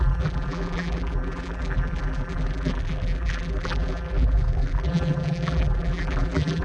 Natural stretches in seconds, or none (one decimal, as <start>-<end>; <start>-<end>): none